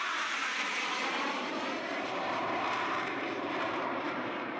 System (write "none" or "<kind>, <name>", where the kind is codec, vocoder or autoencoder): vocoder, BigVGAN v2